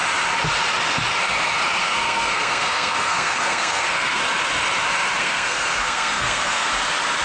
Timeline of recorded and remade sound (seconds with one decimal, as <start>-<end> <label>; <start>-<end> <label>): 0.0-1.8 recorded; 1.8-4.2 remade; 4.2-5.2 recorded; 5.2-6.7 remade; 6.7-7.2 recorded